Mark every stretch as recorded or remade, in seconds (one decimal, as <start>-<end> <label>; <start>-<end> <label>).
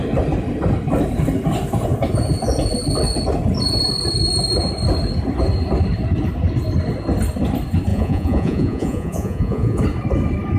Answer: 0.0-7.9 recorded; 7.9-9.8 remade; 9.8-10.6 recorded